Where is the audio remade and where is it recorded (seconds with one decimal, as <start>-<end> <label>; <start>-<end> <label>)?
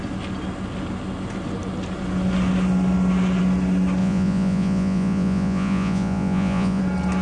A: 0.0-4.0 recorded; 4.0-6.8 remade; 6.8-7.2 recorded